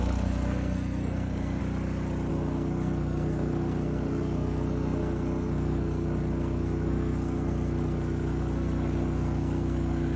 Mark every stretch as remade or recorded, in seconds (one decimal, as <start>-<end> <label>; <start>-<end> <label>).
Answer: 0.0-1.6 remade; 1.6-2.3 recorded; 2.3-10.2 remade